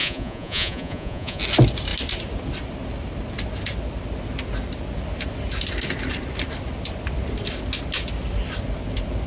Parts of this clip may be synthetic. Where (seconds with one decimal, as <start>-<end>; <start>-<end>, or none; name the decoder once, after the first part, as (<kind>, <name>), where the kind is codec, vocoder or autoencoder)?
0.0-1.4 (vocoder, Vocos)